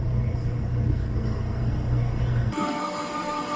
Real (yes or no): no